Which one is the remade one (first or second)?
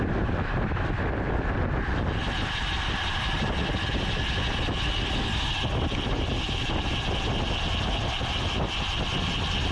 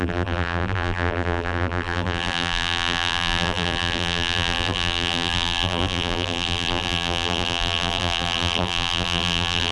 second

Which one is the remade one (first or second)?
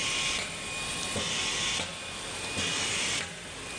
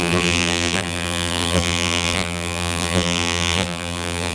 second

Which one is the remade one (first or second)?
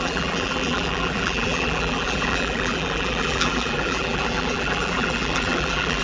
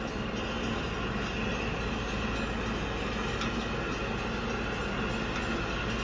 first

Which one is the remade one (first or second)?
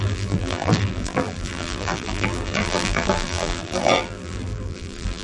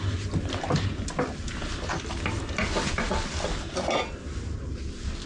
first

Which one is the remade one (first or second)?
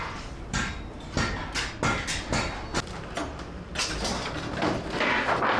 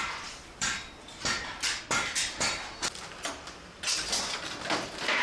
second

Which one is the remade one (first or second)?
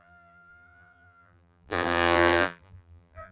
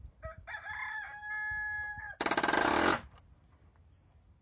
first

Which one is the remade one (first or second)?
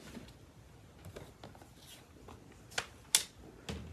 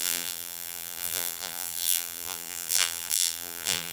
second